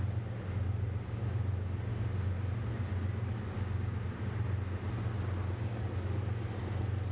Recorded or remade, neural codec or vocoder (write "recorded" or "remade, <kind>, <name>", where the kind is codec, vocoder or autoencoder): recorded